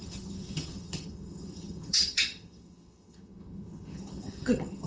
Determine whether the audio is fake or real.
fake